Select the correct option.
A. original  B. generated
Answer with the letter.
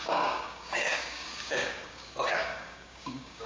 B